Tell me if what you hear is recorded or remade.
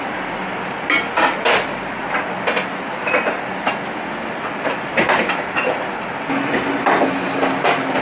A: recorded